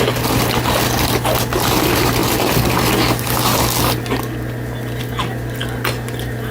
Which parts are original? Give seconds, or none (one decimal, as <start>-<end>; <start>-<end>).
0.0-6.5